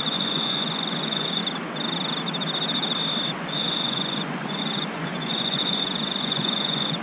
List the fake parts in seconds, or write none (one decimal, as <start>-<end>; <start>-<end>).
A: 0.0-1.4; 3.4-7.0